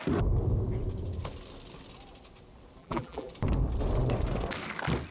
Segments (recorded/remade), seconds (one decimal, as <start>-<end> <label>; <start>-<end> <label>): 0.0-2.8 recorded; 2.8-3.3 remade; 3.3-5.1 recorded